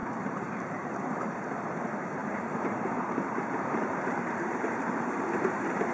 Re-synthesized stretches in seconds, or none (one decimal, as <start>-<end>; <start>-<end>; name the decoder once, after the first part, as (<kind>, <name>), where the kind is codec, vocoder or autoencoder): 0.0-1.8 (vocoder, BigVGAN v2); 2.2-5.2